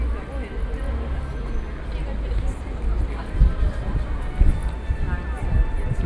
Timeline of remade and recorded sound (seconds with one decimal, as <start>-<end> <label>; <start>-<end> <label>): 0.0-6.1 recorded